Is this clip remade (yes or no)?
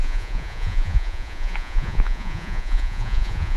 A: yes